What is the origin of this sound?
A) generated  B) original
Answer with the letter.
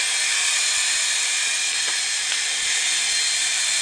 B